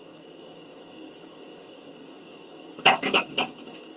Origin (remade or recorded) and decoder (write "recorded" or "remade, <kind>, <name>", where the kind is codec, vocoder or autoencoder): remade, codec, DAC